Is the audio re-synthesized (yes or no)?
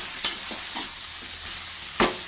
no